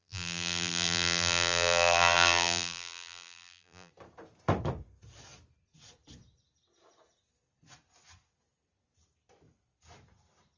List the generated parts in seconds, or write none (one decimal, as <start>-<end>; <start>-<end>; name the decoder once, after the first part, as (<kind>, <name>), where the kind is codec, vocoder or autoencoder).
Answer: 0.0-3.9 (vocoder, BigVGAN v2)